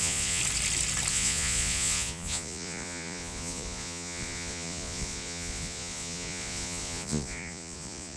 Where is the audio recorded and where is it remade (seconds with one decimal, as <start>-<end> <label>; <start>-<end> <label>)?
0.0-0.4 remade; 0.4-1.1 recorded; 1.1-8.2 remade